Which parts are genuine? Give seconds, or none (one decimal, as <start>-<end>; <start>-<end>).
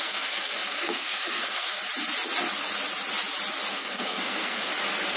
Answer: 1.8-3.7; 4.7-5.2